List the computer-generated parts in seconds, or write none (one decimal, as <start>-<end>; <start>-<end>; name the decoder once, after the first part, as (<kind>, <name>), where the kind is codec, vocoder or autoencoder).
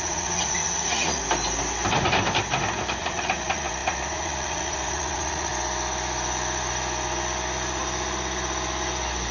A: 0.0-1.2 (vocoder, Vocos); 3.0-5.5